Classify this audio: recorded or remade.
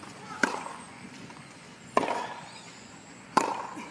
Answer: remade